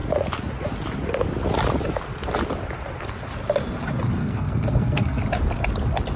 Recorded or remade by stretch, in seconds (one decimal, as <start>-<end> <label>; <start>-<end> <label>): 0.0-4.2 recorded; 4.2-5.2 remade; 5.2-6.2 recorded